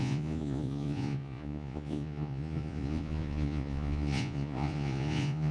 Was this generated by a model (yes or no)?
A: yes